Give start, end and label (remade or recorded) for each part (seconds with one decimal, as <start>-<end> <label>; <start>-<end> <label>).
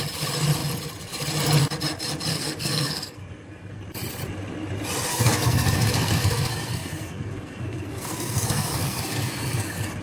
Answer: 0.0-2.3 recorded; 2.3-3.8 remade; 3.8-5.1 recorded; 5.1-10.0 remade